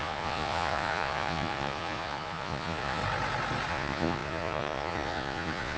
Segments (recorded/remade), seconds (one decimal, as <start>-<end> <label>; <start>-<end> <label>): 0.0-3.0 remade; 3.0-3.7 recorded; 3.7-5.8 remade